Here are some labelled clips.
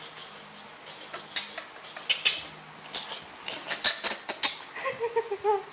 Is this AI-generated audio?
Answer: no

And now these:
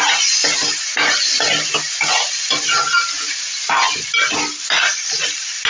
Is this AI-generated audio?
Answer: no